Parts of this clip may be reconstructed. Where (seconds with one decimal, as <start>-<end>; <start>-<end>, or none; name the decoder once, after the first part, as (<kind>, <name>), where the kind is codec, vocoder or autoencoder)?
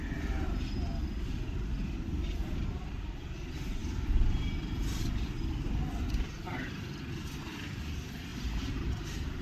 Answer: 2.4-3.1 (vocoder, BigVGAN v2); 8.3-8.9